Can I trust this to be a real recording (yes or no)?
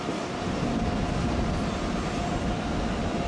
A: yes